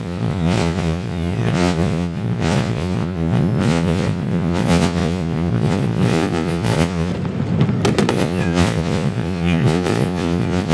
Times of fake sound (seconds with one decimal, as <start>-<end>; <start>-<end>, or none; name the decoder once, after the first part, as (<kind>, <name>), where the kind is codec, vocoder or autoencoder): 0.0-7.1 (vocoder, Vocos); 8.1-10.7